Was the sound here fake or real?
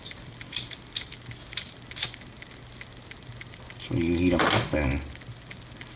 real